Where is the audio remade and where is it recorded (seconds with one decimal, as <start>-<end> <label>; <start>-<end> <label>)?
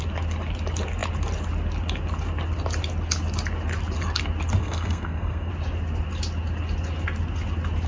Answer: 0.0-4.6 recorded; 4.6-5.5 remade; 5.5-7.9 recorded